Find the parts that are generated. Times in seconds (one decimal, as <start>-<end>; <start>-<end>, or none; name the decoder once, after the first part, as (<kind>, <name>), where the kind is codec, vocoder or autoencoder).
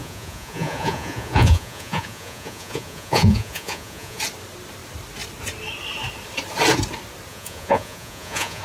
0.0-4.2 (vocoder, Vocos); 7.3-8.6